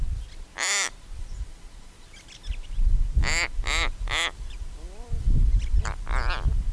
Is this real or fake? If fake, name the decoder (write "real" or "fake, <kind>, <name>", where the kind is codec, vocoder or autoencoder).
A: real